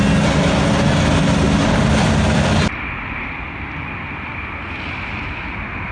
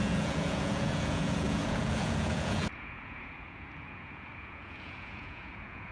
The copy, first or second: second